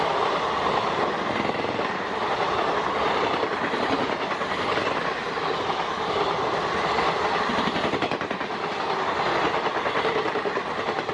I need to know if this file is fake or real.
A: real